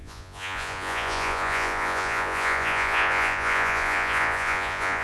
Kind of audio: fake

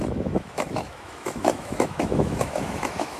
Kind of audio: fake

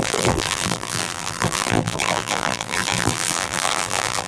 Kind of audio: fake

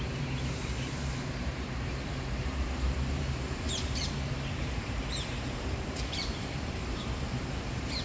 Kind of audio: fake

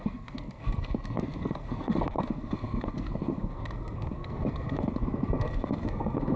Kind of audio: fake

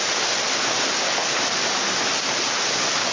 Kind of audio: real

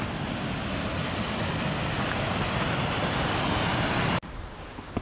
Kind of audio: real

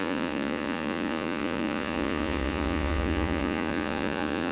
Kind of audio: fake